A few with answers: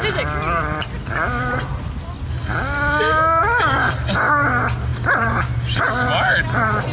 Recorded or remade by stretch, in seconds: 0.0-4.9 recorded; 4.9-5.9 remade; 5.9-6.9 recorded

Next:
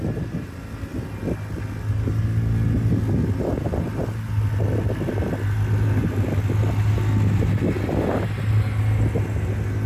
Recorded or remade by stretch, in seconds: 0.0-9.9 recorded

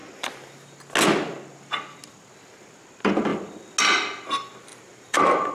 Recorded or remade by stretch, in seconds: 0.0-4.7 recorded; 4.7-5.5 remade